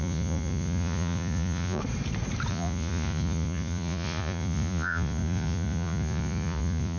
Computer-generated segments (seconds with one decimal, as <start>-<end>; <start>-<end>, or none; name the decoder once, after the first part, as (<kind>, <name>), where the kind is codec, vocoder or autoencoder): 0.0-1.8 (vocoder, Vocos); 2.5-7.0